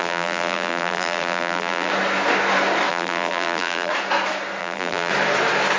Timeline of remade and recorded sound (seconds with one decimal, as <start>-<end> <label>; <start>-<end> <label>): 0.0-1.9 remade; 1.9-2.9 recorded; 2.9-3.9 remade; 3.9-4.6 recorded; 4.6-5.1 remade; 5.1-5.8 recorded